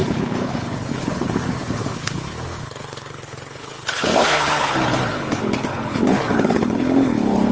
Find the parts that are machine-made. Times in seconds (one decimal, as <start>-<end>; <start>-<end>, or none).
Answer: 0.0-7.5